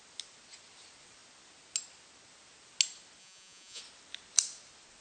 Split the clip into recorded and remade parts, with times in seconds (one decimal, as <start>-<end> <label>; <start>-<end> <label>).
0.0-3.2 recorded; 3.2-3.8 remade; 3.8-5.0 recorded

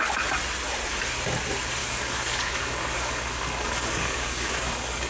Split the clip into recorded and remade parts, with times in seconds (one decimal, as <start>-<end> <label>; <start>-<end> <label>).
0.0-1.8 recorded; 1.8-5.1 remade

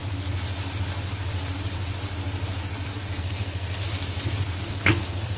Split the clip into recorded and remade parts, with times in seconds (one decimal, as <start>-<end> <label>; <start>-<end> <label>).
0.0-3.2 recorded; 3.2-3.8 remade; 3.8-4.7 recorded; 4.7-5.4 remade

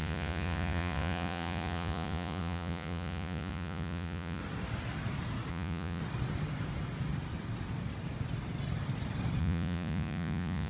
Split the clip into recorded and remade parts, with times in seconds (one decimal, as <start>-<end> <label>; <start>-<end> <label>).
0.0-4.4 remade; 4.4-5.5 recorded; 5.5-6.0 remade; 6.0-9.4 recorded; 9.4-10.7 remade

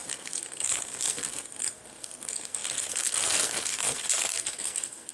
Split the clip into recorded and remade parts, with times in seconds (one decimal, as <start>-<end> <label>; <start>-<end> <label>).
0.0-5.1 remade

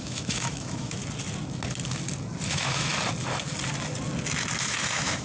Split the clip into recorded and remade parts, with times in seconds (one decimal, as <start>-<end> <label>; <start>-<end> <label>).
0.0-1.0 remade; 1.0-2.5 recorded; 2.5-2.9 remade; 2.9-4.6 recorded; 4.6-5.2 remade

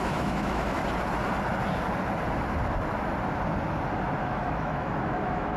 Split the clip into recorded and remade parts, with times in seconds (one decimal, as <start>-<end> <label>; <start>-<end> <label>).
0.0-0.8 remade; 0.8-4.2 recorded; 4.2-5.6 remade

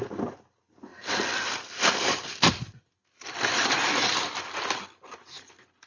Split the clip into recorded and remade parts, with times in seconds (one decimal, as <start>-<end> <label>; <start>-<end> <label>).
0.0-5.9 recorded